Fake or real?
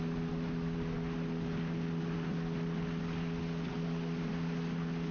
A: real